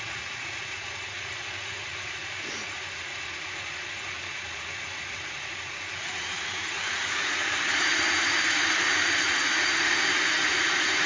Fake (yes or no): yes